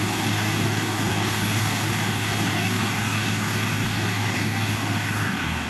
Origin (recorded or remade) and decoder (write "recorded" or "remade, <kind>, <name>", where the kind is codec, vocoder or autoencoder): remade, codec, DAC